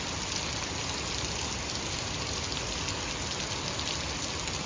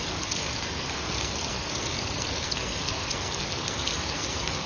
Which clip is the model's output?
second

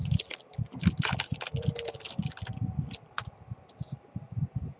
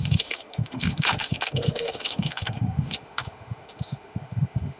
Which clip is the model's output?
second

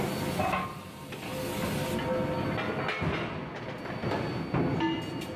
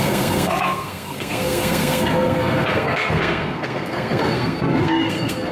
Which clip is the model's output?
second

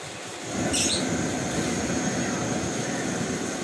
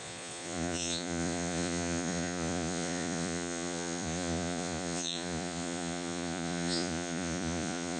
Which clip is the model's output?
second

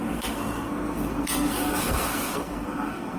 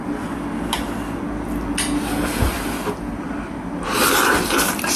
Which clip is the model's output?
first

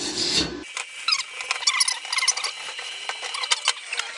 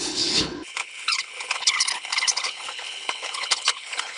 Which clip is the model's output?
second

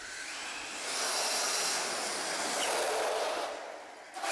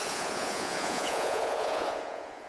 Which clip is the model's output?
second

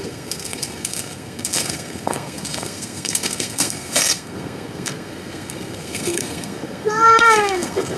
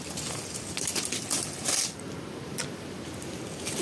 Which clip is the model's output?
first